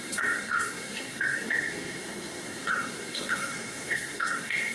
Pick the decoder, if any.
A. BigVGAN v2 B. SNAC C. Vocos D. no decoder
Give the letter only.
B